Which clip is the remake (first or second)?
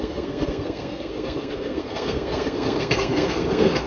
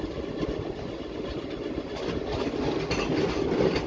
first